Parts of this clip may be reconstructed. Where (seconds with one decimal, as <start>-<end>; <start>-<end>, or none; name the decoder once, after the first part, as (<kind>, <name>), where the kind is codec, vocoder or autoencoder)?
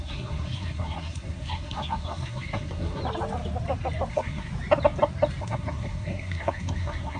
0.0-3.0 (codec, SNAC); 4.1-4.5; 5.4-7.2